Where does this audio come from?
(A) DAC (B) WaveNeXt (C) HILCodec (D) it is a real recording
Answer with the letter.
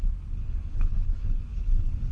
C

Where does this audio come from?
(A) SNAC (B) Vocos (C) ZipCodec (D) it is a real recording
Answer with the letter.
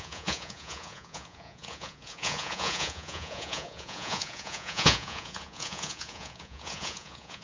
B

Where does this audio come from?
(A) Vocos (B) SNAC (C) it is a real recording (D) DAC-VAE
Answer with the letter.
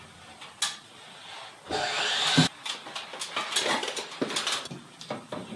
C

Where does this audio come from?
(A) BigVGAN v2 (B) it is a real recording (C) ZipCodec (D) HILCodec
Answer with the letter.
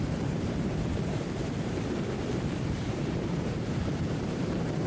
A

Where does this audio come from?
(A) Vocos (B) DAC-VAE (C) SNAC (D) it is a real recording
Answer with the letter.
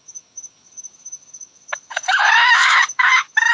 B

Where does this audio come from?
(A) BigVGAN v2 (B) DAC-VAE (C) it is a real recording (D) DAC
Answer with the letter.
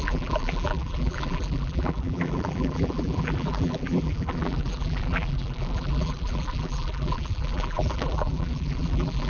A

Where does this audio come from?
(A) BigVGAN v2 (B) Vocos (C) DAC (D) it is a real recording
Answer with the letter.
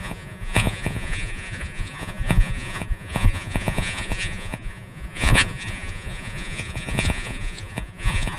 B